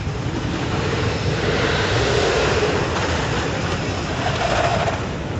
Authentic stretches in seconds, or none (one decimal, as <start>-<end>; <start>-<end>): 0.0-5.4